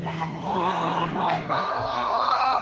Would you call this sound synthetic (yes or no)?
yes